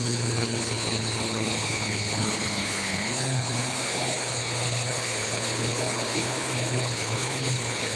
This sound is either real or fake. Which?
fake